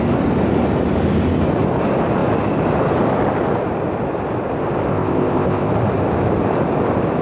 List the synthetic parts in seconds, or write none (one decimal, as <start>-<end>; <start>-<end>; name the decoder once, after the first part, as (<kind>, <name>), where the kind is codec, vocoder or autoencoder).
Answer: 4.9-5.7 (codec, ZipCodec)

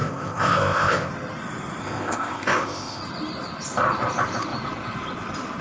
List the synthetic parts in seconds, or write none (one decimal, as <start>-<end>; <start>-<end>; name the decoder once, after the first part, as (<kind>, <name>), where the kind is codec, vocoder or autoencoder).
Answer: 0.0-1.1 (codec, ZipCodec); 1.8-3.0

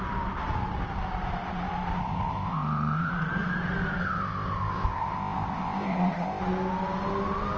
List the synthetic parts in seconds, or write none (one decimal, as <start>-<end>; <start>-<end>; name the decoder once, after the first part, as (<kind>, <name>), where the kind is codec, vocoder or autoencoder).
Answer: 2.0-3.1 (codec, ZipCodec); 4.0-6.4

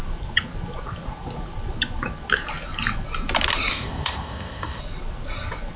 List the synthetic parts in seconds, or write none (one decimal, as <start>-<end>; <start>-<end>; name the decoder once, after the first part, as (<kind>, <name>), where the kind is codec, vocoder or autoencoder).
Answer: 3.7-4.8 (codec, ZipCodec)

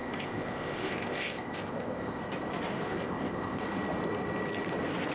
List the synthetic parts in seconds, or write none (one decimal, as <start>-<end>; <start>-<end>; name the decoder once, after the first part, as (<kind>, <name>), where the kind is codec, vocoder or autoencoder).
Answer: 0.0-2.2 (codec, ZipCodec); 2.9-3.6

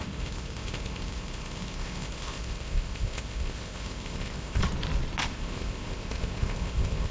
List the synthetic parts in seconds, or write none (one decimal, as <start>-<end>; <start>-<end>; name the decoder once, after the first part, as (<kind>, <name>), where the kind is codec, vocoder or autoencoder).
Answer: 0.0-4.6 (codec, ZipCodec); 5.2-7.1